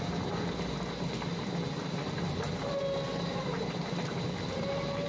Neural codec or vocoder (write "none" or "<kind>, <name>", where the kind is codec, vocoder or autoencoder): none